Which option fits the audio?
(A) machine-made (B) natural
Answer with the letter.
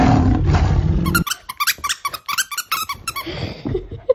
B